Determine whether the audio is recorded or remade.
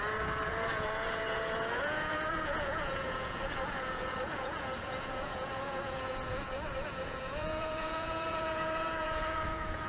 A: remade